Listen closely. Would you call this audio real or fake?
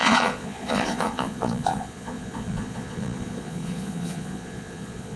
fake